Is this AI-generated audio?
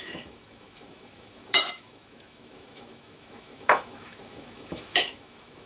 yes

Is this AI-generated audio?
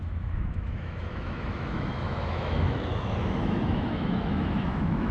yes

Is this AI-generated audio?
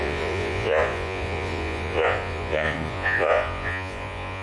yes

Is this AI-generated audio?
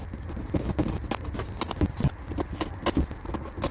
no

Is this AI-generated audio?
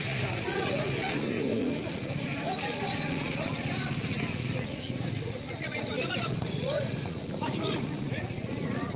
yes